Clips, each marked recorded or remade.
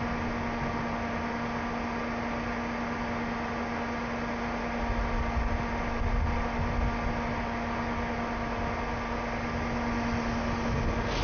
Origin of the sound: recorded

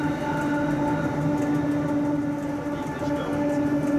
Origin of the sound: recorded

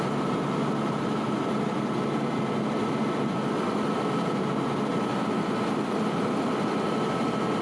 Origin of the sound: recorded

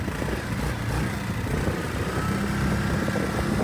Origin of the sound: recorded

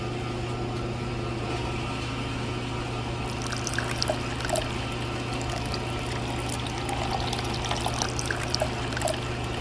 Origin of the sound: recorded